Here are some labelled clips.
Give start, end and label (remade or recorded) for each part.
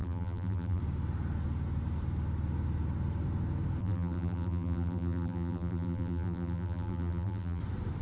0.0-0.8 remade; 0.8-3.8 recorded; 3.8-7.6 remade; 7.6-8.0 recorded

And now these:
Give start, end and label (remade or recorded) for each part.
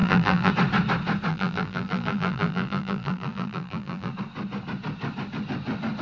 0.0-0.5 remade; 0.5-1.3 recorded; 1.3-4.1 remade; 4.1-6.0 recorded